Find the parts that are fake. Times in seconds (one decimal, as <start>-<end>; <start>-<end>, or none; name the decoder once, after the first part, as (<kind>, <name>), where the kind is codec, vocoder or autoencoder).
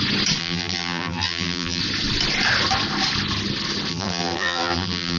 0.4-1.8 (vocoder, BigVGAN v2); 3.9-5.2